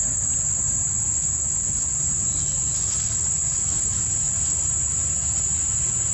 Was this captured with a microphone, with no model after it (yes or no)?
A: yes